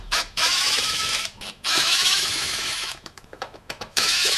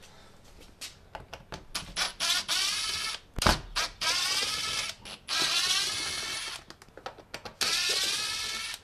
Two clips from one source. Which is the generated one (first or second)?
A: first